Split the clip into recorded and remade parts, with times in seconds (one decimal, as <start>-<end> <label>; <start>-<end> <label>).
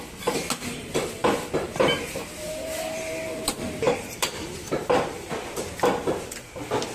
0.0-1.2 recorded; 1.2-5.3 remade; 5.3-6.9 recorded